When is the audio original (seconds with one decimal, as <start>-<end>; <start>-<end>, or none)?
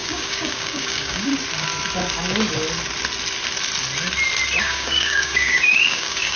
1.3-4.6